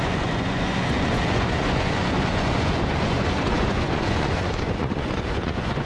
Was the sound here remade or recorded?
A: remade